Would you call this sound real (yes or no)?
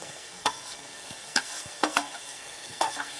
no